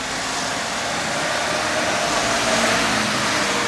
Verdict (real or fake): real